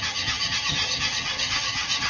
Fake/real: fake